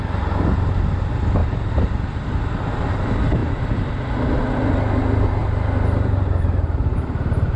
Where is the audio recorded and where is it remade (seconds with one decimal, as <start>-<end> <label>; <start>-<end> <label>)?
0.0-1.4 recorded; 1.4-2.7 remade; 2.7-3.4 recorded; 3.4-3.9 remade; 3.9-5.4 recorded; 5.4-7.6 remade